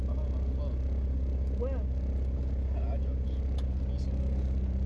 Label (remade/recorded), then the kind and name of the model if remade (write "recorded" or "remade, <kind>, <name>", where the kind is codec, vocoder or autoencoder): recorded